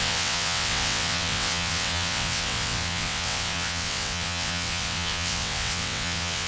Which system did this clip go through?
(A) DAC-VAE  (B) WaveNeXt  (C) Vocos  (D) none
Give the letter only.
B